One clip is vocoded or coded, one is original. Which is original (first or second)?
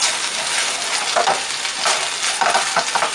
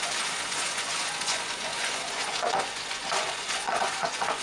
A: first